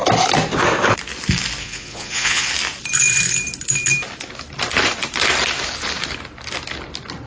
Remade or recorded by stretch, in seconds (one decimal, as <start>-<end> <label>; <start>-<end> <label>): 0.0-1.6 recorded; 1.6-2.5 remade; 2.5-7.3 recorded